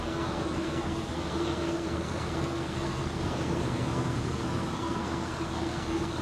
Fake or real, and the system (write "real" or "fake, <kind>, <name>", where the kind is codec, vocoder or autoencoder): fake, codec, SNAC